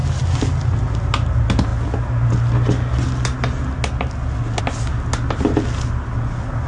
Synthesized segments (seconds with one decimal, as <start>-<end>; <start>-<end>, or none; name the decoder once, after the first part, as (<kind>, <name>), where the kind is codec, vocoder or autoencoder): none